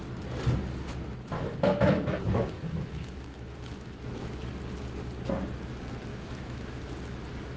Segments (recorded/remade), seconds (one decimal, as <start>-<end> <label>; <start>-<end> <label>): 0.0-1.0 recorded; 1.0-4.4 remade; 4.4-6.1 recorded; 6.1-6.9 remade; 6.9-7.6 recorded